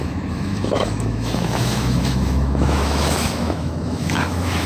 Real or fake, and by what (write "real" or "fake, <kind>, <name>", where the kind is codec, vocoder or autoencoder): fake, autoencoder, DAC-VAE